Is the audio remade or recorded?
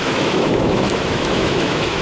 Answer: remade